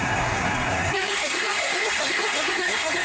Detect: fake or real fake